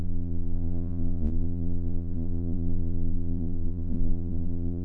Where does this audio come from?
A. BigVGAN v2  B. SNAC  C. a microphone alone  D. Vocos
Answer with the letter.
D